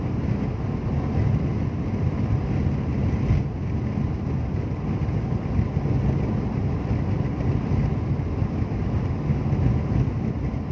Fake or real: real